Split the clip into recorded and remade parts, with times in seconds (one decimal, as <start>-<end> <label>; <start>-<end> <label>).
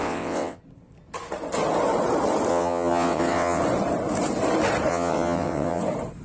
0.0-0.6 remade; 0.6-2.5 recorded; 2.5-3.6 remade; 3.6-4.9 recorded; 4.9-5.8 remade; 5.8-6.2 recorded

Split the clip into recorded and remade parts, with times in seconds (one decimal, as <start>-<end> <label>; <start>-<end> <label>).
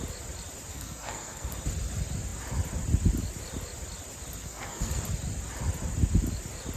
0.0-0.7 recorded; 0.7-1.5 remade; 1.5-4.4 recorded; 4.4-5.0 remade; 5.0-6.8 recorded